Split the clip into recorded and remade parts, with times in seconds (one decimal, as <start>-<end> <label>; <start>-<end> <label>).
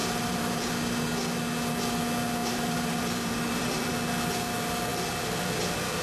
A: 0.0-0.7 remade; 0.7-2.4 recorded; 2.4-3.9 remade; 3.9-6.0 recorded